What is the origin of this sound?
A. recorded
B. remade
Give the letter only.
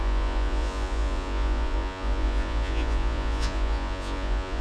B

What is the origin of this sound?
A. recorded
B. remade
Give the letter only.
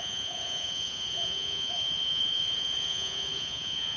B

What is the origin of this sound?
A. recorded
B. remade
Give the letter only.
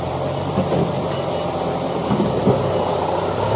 A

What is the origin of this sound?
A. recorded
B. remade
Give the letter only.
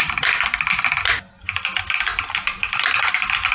A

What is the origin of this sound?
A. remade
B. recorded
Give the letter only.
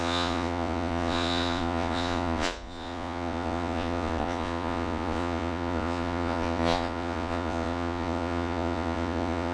A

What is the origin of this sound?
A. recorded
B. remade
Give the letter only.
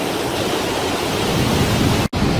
A